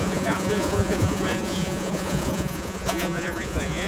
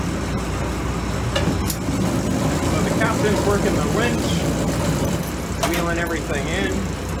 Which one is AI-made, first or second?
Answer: first